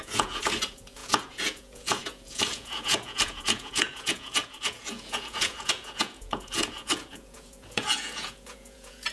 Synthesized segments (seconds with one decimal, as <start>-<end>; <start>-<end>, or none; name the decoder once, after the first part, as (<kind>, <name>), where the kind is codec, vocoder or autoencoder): 0.0-9.1 (vocoder, Vocos)